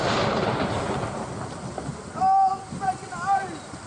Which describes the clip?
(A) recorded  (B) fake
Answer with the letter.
A